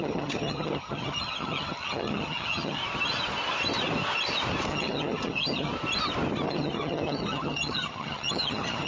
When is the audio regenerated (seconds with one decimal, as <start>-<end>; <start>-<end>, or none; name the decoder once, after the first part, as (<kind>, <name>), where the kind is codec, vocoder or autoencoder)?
0.0-2.8 (vocoder, HiFi-GAN); 4.7-5.7; 6.5-8.9